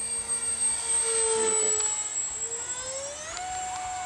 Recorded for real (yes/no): yes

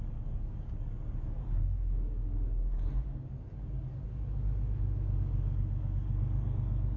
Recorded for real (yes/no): no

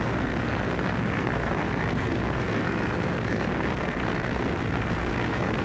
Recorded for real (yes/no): no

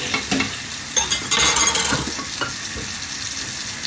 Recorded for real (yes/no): yes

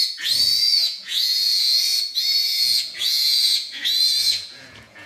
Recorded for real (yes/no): no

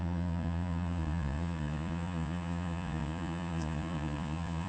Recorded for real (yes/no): no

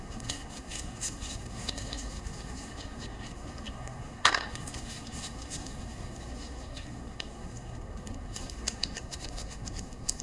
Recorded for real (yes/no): no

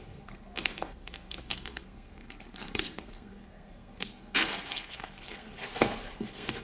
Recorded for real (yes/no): no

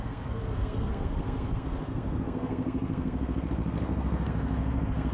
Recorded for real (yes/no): no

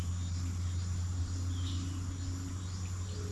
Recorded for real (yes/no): yes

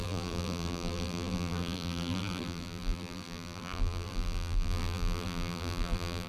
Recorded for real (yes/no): no